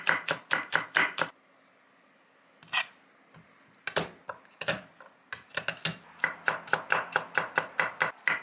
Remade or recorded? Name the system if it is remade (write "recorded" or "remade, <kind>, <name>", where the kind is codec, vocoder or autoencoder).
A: recorded